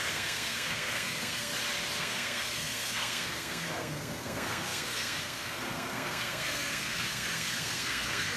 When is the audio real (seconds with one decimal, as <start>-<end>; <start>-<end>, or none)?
1.5-2.0